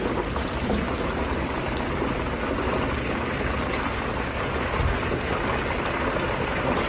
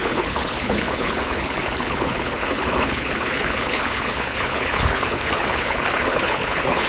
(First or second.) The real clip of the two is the first